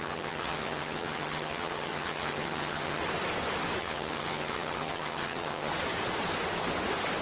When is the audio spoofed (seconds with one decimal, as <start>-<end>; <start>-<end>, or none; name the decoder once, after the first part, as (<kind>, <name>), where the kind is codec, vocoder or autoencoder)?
0.0-3.0 (vocoder, HiFi-GAN); 3.8-5.7